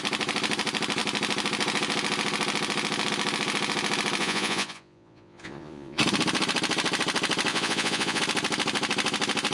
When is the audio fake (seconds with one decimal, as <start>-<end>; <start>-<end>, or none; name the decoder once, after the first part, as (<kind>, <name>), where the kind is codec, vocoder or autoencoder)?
4.2-6.0 (vocoder, Vocos); 7.5-8.2